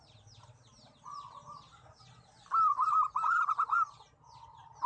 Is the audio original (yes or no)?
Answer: yes